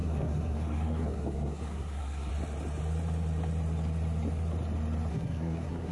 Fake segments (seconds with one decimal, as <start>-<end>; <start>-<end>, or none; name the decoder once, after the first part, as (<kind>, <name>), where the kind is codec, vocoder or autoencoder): 0.0-2.3 (codec, SNAC); 5.1-5.9